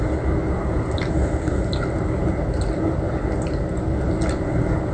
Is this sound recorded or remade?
recorded